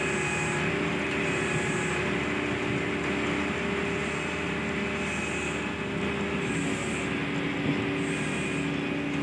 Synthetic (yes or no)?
no